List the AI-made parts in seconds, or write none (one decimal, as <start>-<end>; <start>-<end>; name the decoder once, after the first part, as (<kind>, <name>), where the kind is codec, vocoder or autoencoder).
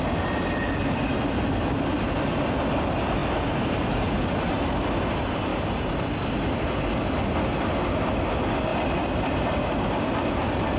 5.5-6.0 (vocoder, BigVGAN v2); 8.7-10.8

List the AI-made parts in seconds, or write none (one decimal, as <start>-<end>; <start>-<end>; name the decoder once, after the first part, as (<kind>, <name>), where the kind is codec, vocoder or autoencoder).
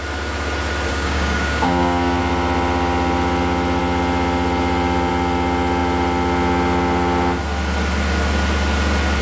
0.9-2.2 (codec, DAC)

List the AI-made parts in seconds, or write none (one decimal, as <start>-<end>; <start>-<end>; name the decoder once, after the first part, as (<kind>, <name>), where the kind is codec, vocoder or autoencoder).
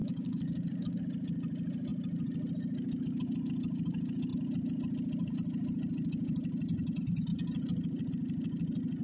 0.0-1.0 (codec, DAC)